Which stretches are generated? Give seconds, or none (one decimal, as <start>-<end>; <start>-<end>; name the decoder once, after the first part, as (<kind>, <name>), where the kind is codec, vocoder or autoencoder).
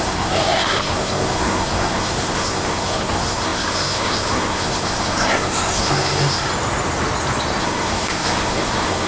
0.0-6.5 (codec, SNAC); 7.6-9.1